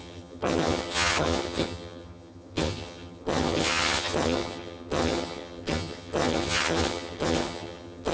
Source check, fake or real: fake